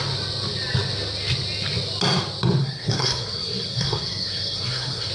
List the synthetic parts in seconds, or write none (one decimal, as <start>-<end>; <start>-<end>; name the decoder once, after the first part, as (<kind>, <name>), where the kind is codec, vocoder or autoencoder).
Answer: 2.6-5.1 (codec, SNAC)

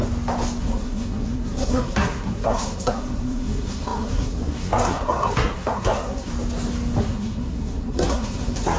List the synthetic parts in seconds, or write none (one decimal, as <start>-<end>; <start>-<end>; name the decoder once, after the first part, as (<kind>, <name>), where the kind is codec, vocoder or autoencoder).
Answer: 0.6-6.3 (codec, SNAC); 7.0-8.8

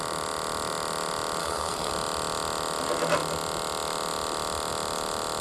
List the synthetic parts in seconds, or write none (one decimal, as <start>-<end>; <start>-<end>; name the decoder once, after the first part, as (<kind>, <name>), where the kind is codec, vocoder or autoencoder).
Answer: 1.4-1.9 (codec, SNAC)

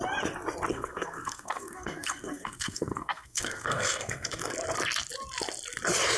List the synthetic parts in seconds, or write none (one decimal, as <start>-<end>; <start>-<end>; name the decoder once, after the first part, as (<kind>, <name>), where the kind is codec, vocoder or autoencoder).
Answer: 0.7-4.4 (codec, SNAC)

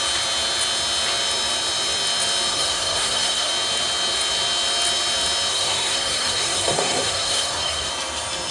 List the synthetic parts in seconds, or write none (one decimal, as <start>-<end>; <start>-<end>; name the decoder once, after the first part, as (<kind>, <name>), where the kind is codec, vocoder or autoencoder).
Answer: 2.5-3.5 (codec, SNAC); 5.5-7.9

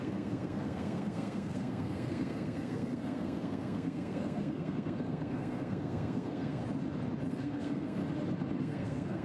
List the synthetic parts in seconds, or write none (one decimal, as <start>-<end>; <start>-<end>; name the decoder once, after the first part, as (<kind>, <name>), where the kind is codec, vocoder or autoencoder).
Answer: 0.0-6.6 (codec, SNAC); 7.3-8.0; 8.6-9.2

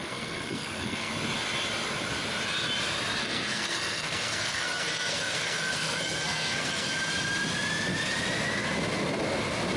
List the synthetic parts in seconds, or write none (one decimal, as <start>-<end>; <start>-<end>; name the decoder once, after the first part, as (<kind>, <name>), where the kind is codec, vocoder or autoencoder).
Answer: 0.0-1.1 (codec, SNAC); 3.2-6.9

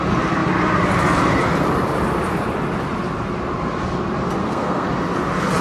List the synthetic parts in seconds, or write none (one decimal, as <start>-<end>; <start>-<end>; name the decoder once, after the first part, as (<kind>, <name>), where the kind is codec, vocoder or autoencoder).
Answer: 4.4-4.9 (codec, SNAC)